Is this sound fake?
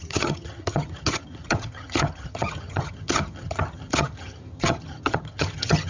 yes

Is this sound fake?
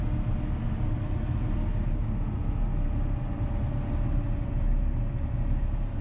no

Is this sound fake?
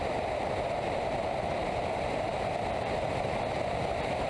no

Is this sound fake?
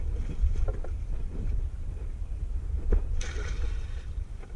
yes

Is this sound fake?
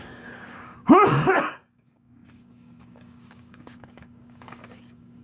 yes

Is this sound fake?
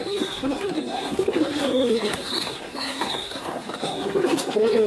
yes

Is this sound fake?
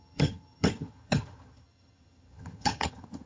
yes